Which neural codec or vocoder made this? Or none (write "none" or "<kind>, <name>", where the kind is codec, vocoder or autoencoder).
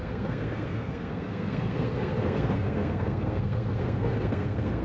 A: codec, SNAC